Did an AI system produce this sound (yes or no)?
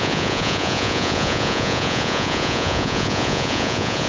yes